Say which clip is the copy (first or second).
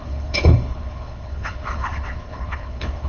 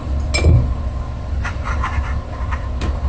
first